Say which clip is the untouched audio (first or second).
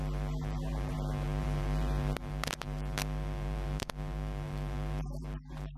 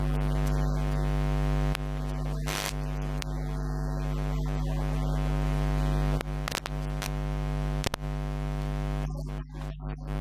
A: second